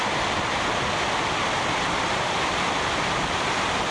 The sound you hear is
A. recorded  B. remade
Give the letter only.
A